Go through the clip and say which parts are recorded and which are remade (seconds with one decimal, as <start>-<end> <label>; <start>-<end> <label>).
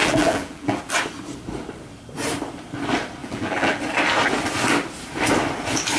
0.0-0.8 remade; 0.8-3.2 recorded; 3.2-3.8 remade; 3.8-6.0 recorded